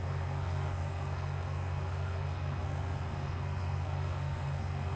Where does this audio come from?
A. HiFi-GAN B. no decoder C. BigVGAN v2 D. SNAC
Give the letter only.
D